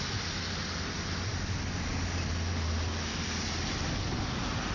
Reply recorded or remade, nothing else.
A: recorded